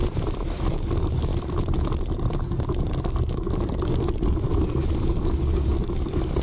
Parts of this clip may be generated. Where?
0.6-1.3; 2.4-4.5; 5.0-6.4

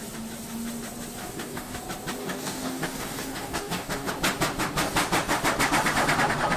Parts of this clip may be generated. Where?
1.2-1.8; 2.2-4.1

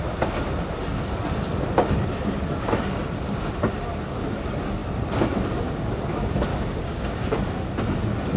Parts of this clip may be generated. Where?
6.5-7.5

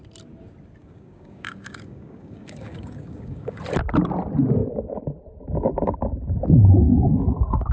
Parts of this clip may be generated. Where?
0.8-3.6

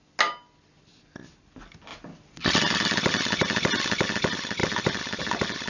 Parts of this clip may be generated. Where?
none

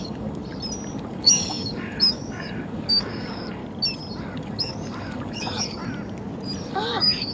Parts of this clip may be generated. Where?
0.0-0.4; 0.9-3.6; 4.2-5.8; 6.7-7.3